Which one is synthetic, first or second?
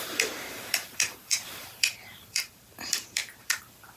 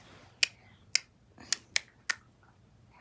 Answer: first